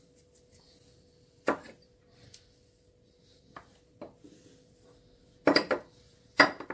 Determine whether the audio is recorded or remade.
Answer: remade